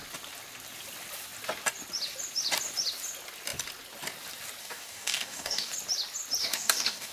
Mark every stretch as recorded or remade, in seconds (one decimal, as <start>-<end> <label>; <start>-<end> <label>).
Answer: 0.0-4.6 recorded; 4.6-5.7 remade; 5.7-6.4 recorded; 6.4-7.1 remade

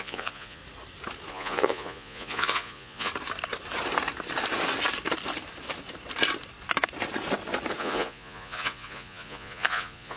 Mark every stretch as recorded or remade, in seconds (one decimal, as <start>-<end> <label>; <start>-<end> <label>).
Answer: 0.0-0.6 remade; 0.6-1.3 recorded; 1.3-3.1 remade; 3.1-7.8 recorded; 7.8-10.2 remade

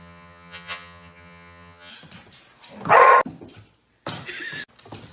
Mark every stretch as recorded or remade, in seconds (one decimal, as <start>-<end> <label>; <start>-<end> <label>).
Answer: 0.0-1.9 remade; 1.9-5.1 recorded